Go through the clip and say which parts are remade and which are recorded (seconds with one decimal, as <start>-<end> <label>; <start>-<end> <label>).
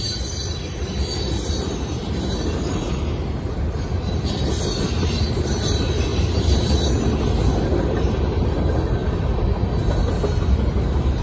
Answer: 0.0-6.1 recorded; 6.1-6.7 remade; 6.7-11.2 recorded